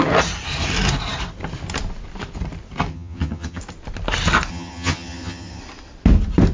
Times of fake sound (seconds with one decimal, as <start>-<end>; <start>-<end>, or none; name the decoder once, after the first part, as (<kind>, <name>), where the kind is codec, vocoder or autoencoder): 2.9-3.6 (vocoder, HiFi-GAN); 4.5-5.6

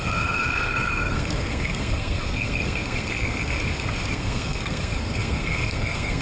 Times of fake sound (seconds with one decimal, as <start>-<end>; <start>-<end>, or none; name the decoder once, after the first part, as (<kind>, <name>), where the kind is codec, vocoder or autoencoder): 0.0-3.6 (codec, SNAC); 4.1-6.2

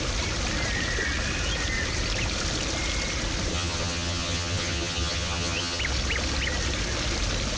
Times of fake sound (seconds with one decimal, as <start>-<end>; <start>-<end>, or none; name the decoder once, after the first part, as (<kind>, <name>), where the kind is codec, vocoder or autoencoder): 3.5-5.8 (vocoder, HiFi-GAN)

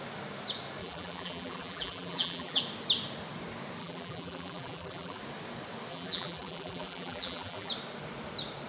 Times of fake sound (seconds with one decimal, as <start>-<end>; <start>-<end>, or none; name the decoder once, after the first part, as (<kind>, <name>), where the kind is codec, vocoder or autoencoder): 0.8-2.6 (vocoder, BigVGAN v2); 3.8-5.2; 5.9-7.7

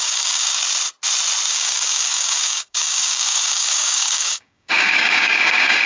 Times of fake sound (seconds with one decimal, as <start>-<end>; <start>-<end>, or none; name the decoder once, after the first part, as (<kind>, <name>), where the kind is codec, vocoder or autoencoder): 0.0-0.6 (codec, DAC); 1.5-5.9